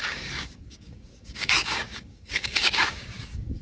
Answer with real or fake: fake